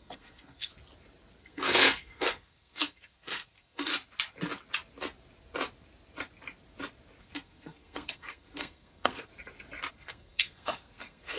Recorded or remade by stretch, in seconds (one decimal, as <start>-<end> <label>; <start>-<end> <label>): 0.0-0.7 remade; 0.7-1.4 recorded; 1.4-3.9 remade; 3.9-7.2 recorded; 7.2-9.3 remade; 9.3-9.9 recorded; 9.9-11.4 remade